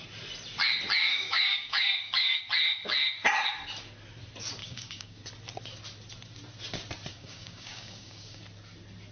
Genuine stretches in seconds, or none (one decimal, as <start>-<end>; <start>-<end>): 0.0-1.1; 2.4-4.6; 5.2-7.1; 8.4-9.1